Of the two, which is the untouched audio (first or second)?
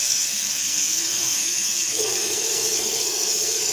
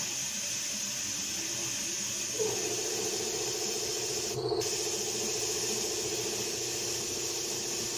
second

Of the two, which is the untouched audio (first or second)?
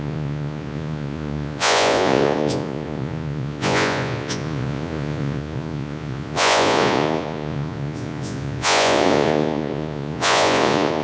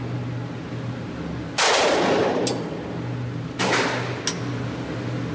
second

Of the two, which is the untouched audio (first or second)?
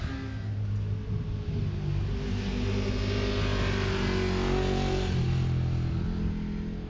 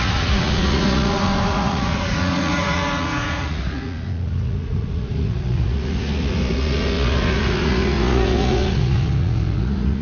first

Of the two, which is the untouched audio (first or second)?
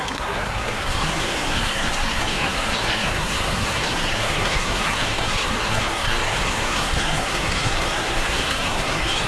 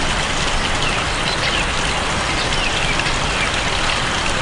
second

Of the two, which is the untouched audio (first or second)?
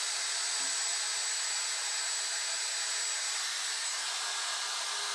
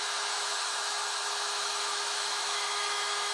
first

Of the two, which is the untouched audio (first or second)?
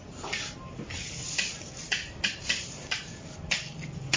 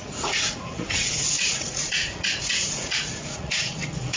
first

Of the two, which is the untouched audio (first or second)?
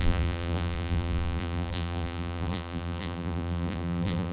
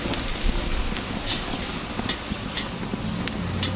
second